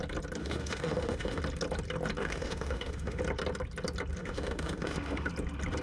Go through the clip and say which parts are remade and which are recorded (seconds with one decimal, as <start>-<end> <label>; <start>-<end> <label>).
0.0-0.4 recorded; 0.4-1.4 remade; 1.4-2.2 recorded; 2.2-3.2 remade; 3.2-4.2 recorded; 4.2-5.3 remade; 5.3-5.8 recorded